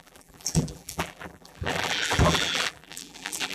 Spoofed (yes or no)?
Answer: yes